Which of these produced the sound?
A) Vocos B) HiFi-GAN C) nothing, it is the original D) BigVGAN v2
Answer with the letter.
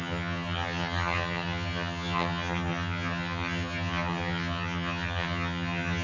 B